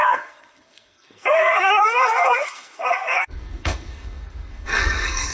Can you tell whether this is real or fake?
fake